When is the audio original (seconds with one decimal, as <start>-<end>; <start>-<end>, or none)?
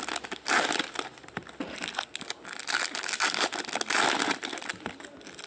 0.0-5.5